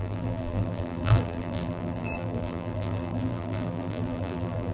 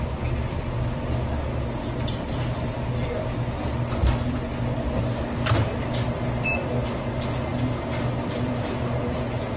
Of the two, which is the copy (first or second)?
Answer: first